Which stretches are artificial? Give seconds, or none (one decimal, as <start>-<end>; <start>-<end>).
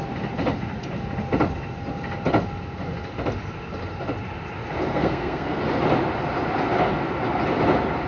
4.9-5.6